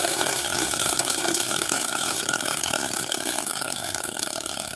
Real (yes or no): no